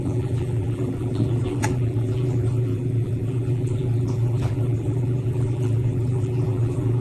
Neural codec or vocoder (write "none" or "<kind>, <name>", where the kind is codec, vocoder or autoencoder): vocoder, BigVGAN v2